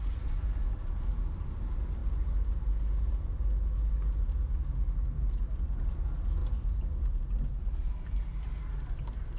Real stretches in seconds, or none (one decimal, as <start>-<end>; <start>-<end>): 0.0-9.4